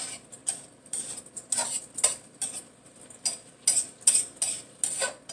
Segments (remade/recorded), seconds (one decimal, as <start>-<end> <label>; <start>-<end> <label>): 0.0-5.3 recorded